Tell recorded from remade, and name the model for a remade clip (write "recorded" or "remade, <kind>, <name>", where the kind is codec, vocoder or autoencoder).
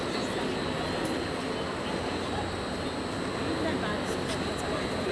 recorded